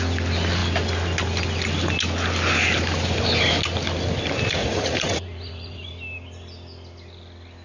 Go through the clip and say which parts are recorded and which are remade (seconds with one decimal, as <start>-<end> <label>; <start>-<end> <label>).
0.0-4.6 recorded; 4.6-5.9 remade; 5.9-7.6 recorded